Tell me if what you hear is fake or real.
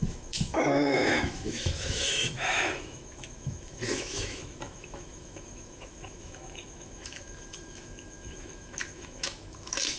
fake